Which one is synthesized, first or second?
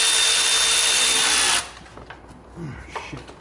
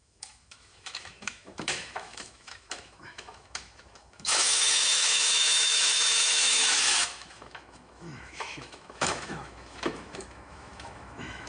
second